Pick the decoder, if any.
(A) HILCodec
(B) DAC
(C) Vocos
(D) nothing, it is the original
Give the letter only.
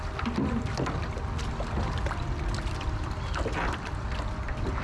D